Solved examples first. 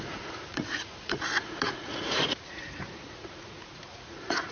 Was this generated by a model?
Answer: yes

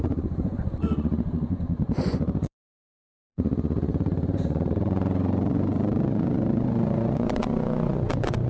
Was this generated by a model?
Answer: yes